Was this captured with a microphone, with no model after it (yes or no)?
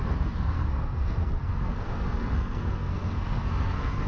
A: no